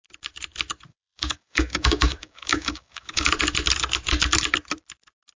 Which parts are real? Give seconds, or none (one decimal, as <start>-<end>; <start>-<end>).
0.0-0.9; 3.3-5.4